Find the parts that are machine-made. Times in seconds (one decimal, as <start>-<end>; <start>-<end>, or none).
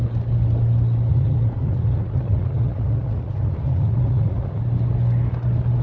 1.1-4.6